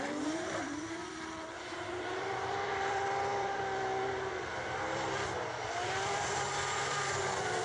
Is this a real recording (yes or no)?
no